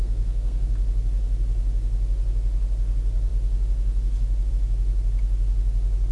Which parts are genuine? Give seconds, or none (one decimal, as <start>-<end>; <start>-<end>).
0.7-6.1